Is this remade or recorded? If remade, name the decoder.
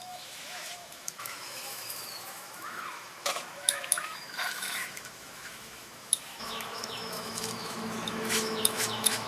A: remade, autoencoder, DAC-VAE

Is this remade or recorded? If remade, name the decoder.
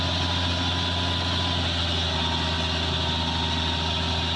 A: recorded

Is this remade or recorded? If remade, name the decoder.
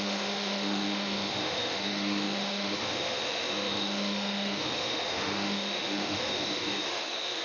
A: remade, autoencoder, DAC-VAE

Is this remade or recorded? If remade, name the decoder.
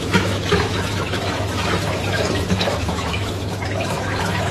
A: remade, autoencoder, DAC-VAE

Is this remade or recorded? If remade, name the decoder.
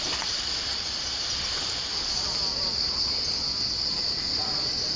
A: recorded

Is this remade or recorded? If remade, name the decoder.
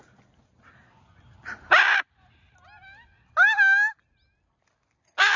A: recorded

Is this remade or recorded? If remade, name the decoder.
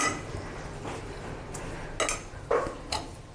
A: recorded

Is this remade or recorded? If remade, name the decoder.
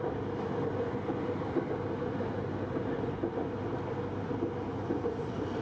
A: recorded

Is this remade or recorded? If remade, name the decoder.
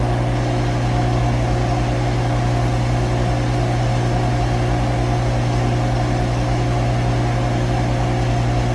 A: recorded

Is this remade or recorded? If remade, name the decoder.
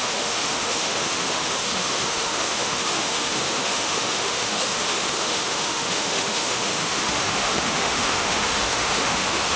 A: remade, autoencoder, DAC-VAE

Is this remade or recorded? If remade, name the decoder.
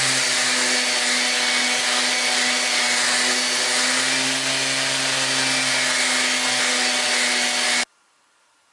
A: recorded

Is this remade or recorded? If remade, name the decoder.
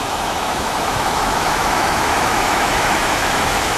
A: remade, autoencoder, DAC-VAE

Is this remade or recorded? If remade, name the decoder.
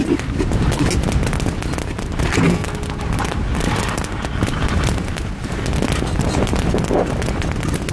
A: recorded